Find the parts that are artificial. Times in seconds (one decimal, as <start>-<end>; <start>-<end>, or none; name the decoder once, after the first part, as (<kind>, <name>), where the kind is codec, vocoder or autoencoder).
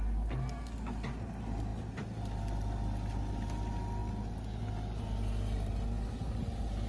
none